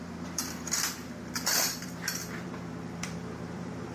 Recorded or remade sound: remade